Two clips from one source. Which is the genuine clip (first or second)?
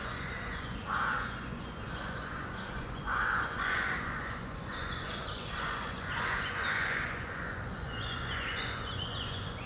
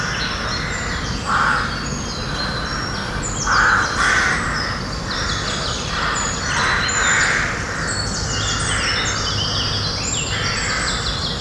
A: second